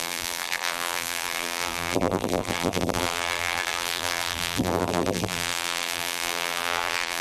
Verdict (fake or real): fake